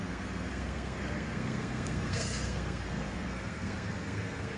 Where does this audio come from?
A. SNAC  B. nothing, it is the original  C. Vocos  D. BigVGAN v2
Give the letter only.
A